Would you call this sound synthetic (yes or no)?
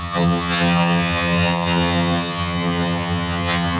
yes